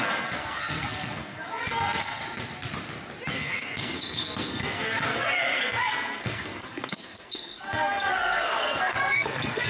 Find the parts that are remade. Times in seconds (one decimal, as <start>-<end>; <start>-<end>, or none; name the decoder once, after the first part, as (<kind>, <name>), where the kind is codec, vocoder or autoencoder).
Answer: 0.0-2.2 (codec, SNAC); 3.3-9.7